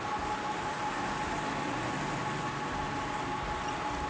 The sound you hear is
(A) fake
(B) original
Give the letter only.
B